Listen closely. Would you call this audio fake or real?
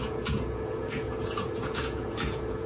fake